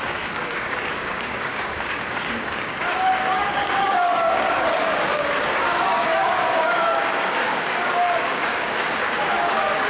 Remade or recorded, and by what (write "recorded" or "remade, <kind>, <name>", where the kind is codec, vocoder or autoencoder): remade, codec, DAC